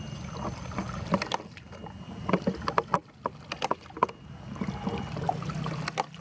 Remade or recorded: recorded